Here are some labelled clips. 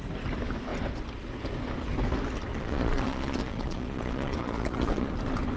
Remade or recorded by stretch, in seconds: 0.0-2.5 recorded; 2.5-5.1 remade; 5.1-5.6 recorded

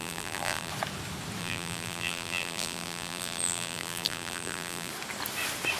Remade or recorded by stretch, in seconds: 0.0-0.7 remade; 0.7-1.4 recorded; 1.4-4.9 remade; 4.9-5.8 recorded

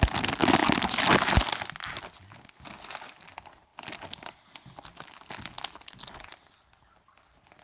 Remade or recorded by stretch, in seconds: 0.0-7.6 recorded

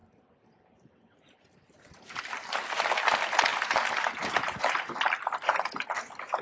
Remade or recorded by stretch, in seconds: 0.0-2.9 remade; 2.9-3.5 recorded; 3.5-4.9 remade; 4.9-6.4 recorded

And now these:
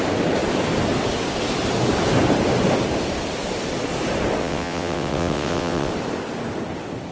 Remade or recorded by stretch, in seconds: 0.0-4.4 recorded; 4.4-5.9 remade; 5.9-7.1 recorded

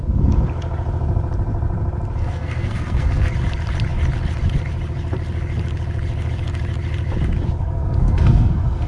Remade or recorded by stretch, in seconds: 0.0-2.2 recorded; 2.2-3.3 remade; 3.3-7.6 recorded; 7.6-8.9 remade

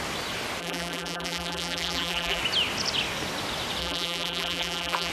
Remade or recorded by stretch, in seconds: 0.0-0.6 recorded; 0.6-2.4 remade; 2.4-3.8 recorded; 3.8-5.1 remade